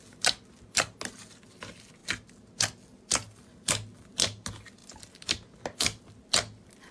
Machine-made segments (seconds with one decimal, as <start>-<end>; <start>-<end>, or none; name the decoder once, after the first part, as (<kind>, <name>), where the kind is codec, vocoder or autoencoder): 4.8-5.6 (vocoder, BigVGAN v2)

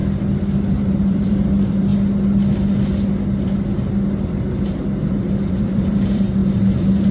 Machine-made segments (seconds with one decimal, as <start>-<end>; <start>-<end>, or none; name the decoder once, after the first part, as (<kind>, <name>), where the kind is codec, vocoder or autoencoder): 0.7-1.9 (vocoder, BigVGAN v2); 5.5-7.1